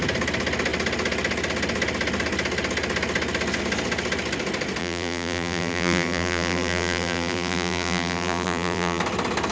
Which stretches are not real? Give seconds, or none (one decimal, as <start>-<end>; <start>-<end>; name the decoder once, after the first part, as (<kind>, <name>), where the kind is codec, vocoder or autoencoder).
4.8-9.0 (vocoder, BigVGAN v2)